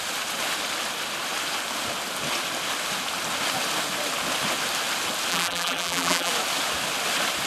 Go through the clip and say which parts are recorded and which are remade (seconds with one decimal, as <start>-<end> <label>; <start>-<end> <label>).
0.0-5.3 recorded; 5.3-6.3 remade; 6.3-7.5 recorded

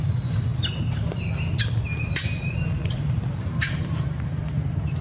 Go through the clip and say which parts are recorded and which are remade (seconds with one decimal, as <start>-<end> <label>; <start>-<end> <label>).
0.0-0.5 remade; 0.5-3.4 recorded; 3.4-5.0 remade

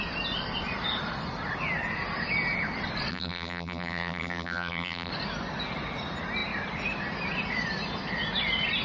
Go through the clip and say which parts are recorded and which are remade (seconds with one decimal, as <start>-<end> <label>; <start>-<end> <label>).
0.0-3.1 recorded; 3.1-5.1 remade; 5.1-8.8 recorded

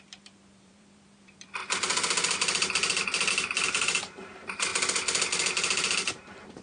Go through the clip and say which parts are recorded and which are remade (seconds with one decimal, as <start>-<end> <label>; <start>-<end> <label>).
0.0-1.6 remade; 1.6-3.3 recorded; 3.3-4.7 remade; 4.7-6.1 recorded; 6.1-6.6 remade

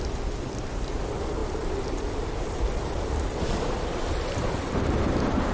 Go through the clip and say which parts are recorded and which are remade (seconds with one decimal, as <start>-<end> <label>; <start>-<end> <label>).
0.0-1.4 recorded; 1.4-4.7 remade; 4.7-5.5 recorded